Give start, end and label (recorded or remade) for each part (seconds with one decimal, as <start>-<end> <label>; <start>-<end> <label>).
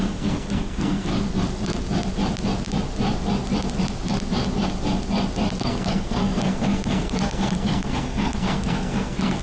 0.0-1.1 remade; 1.1-5.6 recorded; 5.6-9.4 remade